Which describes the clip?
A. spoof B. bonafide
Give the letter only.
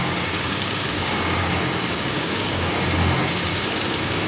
A